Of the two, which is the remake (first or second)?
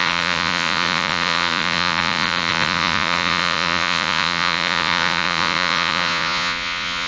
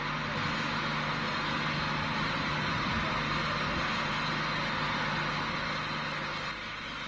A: first